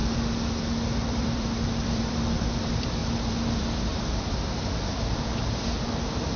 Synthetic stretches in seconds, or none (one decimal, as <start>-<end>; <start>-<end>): 0.0-6.4